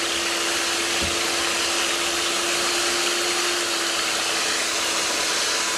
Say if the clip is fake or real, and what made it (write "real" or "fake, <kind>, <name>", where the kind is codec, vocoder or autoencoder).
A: real